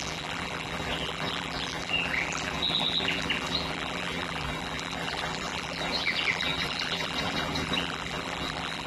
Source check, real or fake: fake